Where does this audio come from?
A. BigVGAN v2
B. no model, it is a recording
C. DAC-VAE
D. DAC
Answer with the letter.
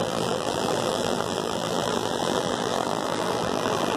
A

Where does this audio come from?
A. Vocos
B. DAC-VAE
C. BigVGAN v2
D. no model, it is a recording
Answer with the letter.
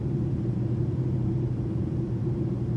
C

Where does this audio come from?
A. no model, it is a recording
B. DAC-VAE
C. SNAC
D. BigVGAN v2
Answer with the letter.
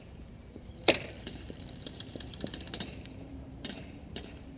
D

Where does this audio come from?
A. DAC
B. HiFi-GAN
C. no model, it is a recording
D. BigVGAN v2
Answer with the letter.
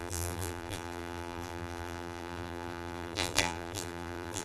D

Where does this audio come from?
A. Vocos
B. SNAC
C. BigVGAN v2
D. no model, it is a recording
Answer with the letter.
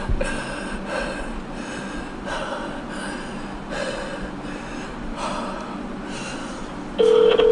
D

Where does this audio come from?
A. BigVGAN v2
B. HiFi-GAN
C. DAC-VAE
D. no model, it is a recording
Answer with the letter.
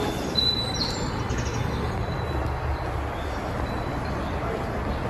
A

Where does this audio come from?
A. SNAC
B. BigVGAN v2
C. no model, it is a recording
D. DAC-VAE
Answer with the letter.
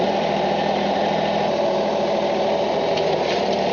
B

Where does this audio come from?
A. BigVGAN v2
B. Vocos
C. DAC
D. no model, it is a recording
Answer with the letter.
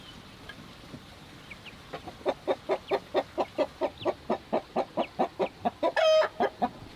D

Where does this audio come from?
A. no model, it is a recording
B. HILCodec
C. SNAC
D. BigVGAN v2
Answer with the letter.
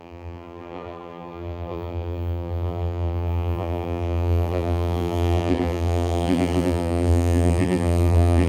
D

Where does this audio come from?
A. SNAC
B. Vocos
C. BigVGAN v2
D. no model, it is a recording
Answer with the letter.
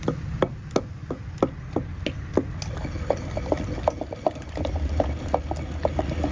D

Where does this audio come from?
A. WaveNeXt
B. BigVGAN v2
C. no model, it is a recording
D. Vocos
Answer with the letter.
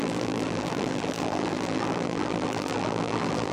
B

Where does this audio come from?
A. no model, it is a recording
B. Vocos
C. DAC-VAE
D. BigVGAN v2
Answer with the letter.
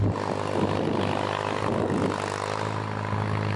A